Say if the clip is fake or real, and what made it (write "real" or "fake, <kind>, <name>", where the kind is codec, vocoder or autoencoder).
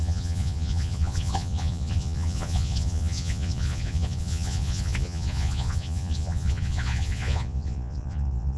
fake, vocoder, Vocos